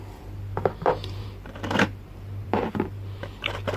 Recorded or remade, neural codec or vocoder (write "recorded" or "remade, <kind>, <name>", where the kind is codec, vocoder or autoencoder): remade, vocoder, BigVGAN v2